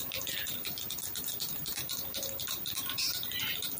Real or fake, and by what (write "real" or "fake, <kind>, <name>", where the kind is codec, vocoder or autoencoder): fake, vocoder, BigVGAN v2